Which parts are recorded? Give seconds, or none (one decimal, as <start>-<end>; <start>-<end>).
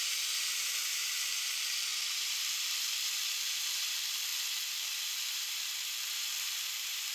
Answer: 0.8-1.4